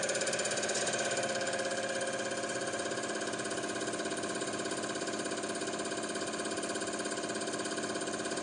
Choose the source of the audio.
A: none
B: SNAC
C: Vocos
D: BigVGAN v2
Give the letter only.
A